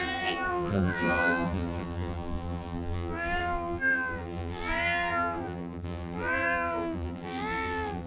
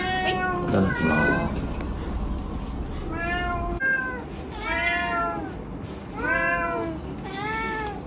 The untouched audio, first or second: second